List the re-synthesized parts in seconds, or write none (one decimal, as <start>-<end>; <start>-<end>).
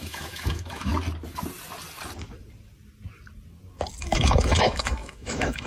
0.0-0.9; 4.0-5.7